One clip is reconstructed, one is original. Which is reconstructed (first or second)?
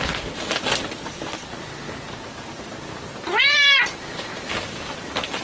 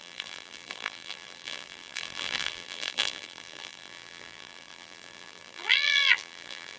second